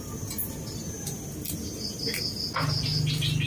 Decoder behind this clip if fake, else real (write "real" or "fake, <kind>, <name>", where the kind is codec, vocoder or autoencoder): real